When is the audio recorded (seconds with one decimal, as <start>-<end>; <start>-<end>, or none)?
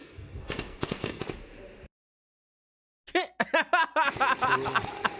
1.2-5.2